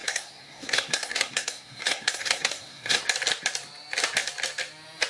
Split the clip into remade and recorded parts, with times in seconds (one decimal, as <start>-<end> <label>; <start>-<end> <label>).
0.0-3.0 remade; 3.0-5.1 recorded